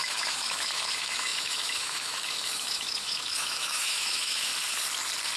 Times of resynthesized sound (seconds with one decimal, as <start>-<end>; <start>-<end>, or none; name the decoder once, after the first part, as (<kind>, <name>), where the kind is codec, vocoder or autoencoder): 0.0-4.5 (autoencoder, DAC-VAE)